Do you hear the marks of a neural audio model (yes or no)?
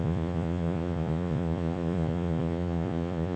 yes